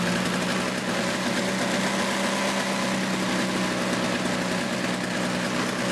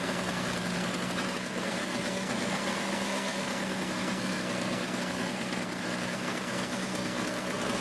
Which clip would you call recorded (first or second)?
first